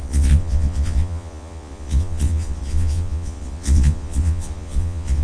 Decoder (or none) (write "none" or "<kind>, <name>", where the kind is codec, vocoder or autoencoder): vocoder, Vocos